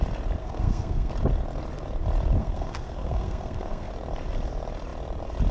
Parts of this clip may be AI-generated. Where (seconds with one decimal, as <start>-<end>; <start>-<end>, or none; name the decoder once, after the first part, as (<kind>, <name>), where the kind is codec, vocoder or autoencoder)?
0.4-1.1 (codec, SNAC); 2.4-3.9